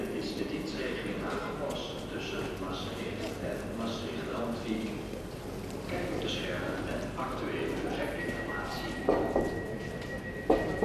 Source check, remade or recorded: recorded